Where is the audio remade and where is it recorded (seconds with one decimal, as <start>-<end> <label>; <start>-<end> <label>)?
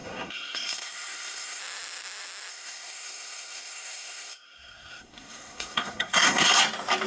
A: 0.0-1.6 remade; 1.6-2.5 recorded; 2.5-6.6 remade; 6.6-7.1 recorded